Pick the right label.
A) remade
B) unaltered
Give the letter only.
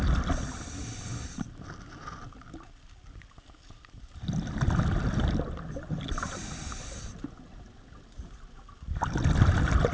B